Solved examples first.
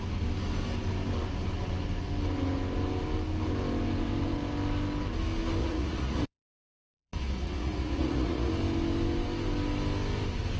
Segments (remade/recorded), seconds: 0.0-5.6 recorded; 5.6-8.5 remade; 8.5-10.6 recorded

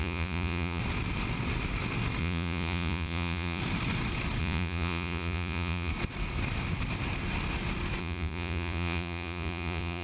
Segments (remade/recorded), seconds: 0.0-0.8 remade; 0.8-2.2 recorded; 2.2-3.6 remade; 3.6-4.4 recorded; 4.4-5.9 remade; 5.9-8.0 recorded; 8.0-10.0 remade

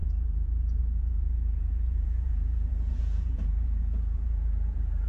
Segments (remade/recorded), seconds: 0.0-5.1 remade